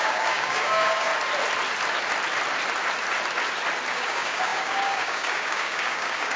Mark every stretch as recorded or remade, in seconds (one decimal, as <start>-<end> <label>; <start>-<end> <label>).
0.0-1.1 remade; 1.1-3.9 recorded; 3.9-6.4 remade